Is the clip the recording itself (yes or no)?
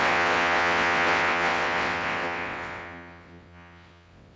no